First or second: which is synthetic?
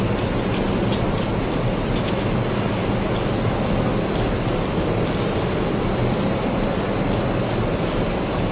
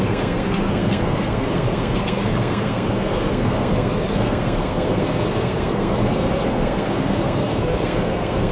second